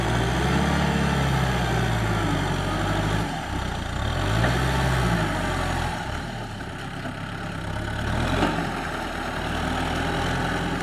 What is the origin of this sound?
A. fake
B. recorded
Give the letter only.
B